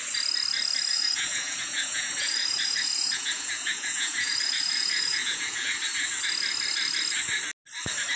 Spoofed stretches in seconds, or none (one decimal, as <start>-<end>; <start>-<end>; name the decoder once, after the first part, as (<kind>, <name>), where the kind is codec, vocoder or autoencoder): 0.9-5.8 (vocoder, Vocos)